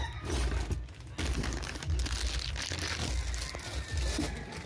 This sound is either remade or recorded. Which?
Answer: recorded